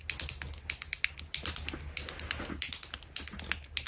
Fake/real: real